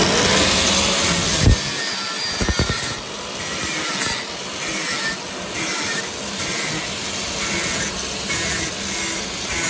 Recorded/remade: recorded